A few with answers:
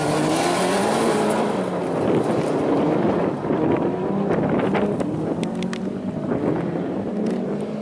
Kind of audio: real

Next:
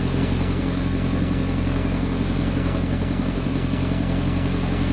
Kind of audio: fake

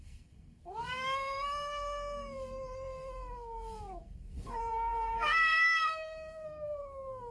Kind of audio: fake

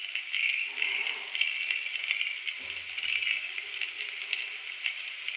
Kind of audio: real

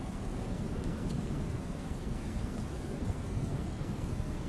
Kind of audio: fake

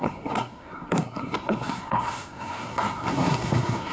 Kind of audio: fake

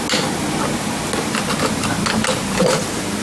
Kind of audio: real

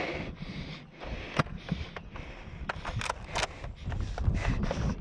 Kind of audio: real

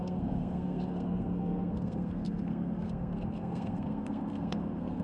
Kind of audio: fake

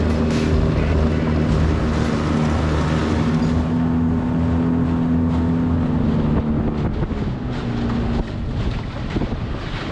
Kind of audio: real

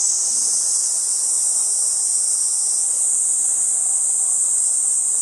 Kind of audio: real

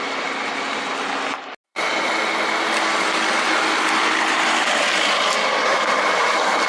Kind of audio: real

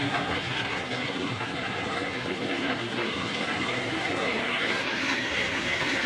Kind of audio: fake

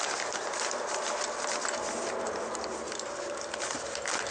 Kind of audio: real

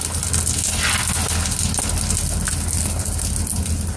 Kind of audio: real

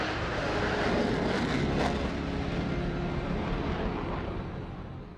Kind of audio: real